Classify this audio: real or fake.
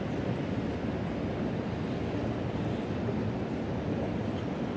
real